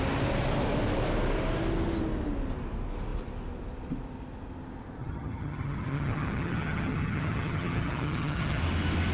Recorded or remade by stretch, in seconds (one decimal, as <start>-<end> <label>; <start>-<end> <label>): 0.0-5.0 recorded; 5.0-8.6 remade; 8.6-9.1 recorded